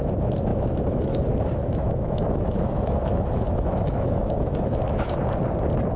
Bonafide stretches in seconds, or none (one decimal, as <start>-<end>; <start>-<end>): 0.0-0.5; 1.2-1.6; 5.2-6.0